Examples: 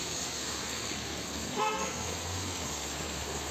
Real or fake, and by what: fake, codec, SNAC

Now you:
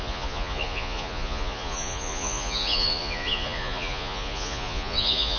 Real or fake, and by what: fake, vocoder, Vocos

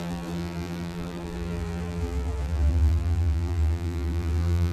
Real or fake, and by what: fake, vocoder, BigVGAN v2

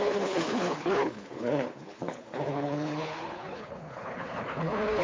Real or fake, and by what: fake, codec, HILCodec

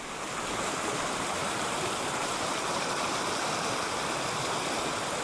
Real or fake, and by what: real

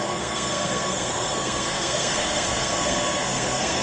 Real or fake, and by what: fake, codec, SNAC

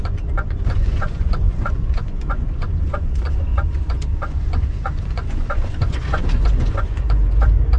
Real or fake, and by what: fake, vocoder, Vocos